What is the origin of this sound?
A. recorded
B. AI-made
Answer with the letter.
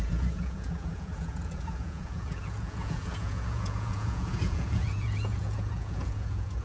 B